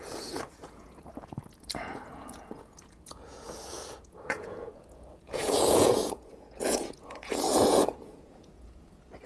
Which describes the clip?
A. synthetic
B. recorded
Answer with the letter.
A